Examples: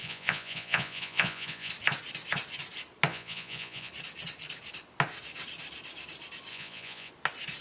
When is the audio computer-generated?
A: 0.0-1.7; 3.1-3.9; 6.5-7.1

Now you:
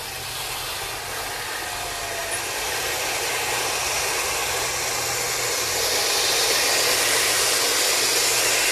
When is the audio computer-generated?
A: none

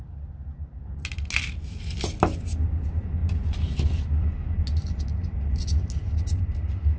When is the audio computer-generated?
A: none

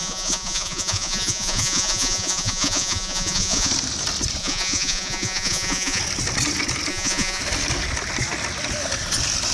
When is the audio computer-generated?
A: 0.0-3.7; 4.4-6.0; 6.9-7.4

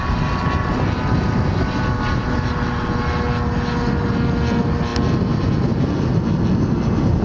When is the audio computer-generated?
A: none

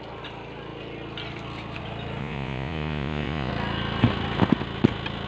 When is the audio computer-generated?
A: 2.2-3.5

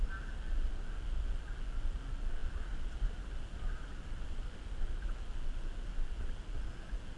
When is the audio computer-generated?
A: none

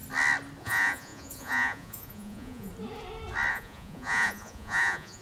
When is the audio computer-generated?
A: 0.6-2.7; 3.5-5.2